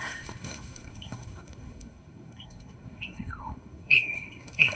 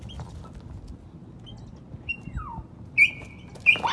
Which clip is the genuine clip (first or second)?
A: second